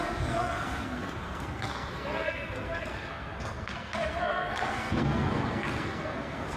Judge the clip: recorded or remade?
remade